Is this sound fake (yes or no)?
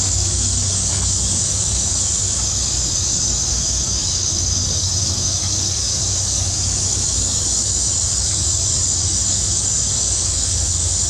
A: yes